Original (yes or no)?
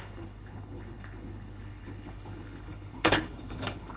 no